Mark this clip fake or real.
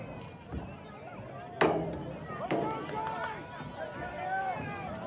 real